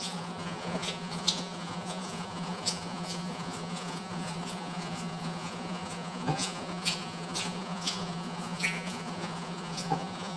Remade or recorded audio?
remade